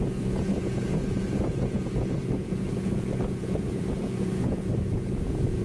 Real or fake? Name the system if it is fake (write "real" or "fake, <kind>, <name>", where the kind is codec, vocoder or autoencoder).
fake, vocoder, Vocos